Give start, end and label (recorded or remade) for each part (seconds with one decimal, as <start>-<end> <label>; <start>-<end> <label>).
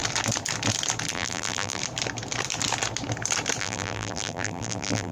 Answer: 0.0-1.1 recorded; 1.1-1.8 remade; 1.8-3.6 recorded; 3.6-5.1 remade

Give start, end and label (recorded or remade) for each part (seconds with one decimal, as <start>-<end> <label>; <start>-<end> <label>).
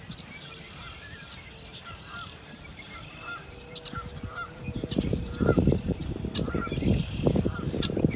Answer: 0.0-1.7 recorded; 1.7-6.1 remade; 6.1-8.2 recorded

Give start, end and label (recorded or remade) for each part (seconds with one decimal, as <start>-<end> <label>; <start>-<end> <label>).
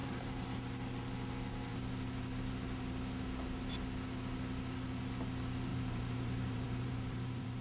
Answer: 0.0-0.6 remade; 0.6-5.7 recorded; 5.7-7.6 remade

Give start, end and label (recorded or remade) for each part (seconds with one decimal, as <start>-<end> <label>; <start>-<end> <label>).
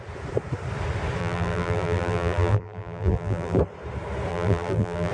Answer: 0.0-1.2 recorded; 1.2-3.6 remade; 3.6-4.3 recorded; 4.3-5.1 remade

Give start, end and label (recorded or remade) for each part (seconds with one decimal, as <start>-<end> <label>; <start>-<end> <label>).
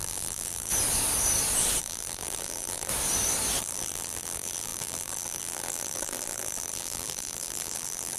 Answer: 0.0-0.7 remade; 0.7-1.8 recorded; 1.8-2.9 remade; 2.9-3.6 recorded; 3.6-8.2 remade